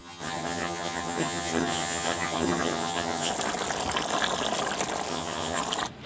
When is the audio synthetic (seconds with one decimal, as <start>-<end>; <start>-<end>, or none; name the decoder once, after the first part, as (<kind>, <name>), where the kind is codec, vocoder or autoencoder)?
0.0-3.3 (vocoder, HiFi-GAN); 5.1-5.6

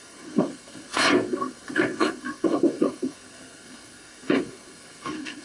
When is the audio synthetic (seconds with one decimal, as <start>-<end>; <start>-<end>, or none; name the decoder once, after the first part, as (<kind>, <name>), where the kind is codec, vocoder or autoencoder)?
0.0-5.4 (codec, SNAC)

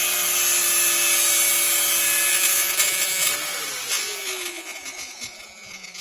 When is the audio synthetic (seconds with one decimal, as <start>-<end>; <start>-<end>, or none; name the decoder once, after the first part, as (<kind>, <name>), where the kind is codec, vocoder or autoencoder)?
2.3-3.3 (vocoder, Vocos); 3.9-6.0

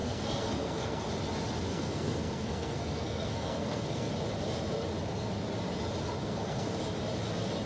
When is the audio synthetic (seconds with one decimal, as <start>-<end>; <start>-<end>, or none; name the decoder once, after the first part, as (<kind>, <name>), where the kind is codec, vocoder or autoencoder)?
0.0-1.1 (codec, SNAC); 1.7-4.1; 6.2-6.8

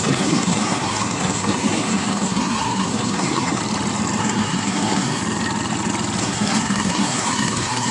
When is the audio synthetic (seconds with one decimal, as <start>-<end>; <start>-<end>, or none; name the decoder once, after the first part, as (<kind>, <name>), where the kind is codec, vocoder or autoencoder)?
0.0-3.6 (codec, SNAC); 4.2-5.2; 6.2-7.9

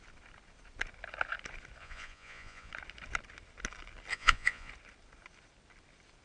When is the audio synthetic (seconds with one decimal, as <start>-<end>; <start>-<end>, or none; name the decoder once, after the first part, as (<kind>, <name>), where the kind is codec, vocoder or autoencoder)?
1.8-2.7 (vocoder, Vocos); 4.1-4.7

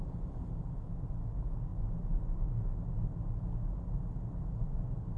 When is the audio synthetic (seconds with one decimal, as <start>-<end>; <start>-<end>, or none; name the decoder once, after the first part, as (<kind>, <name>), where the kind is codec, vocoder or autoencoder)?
none

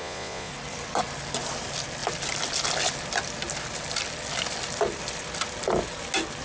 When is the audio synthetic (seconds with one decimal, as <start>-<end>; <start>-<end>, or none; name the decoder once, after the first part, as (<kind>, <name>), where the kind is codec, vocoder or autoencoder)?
0.0-0.5 (vocoder, Vocos)